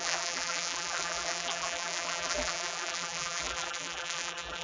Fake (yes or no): yes